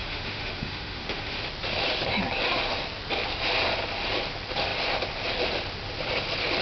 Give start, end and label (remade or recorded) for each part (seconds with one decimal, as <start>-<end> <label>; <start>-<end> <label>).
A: 0.0-1.4 remade; 1.4-6.6 recorded